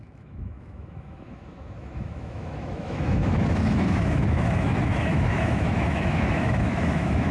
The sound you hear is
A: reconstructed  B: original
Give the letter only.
A